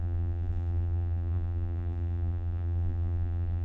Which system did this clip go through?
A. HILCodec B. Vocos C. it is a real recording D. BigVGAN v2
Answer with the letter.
D